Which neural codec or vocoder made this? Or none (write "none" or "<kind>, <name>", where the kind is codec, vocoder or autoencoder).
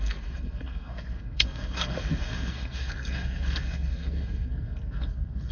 codec, SNAC